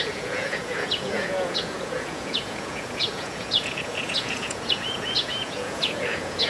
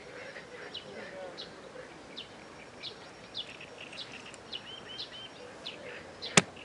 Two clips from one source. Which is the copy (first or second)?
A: first